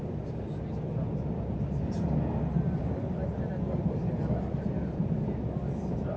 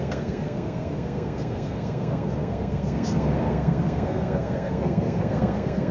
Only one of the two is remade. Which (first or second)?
second